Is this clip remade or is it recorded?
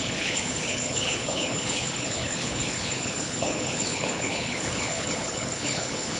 remade